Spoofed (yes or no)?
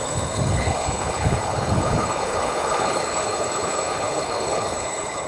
yes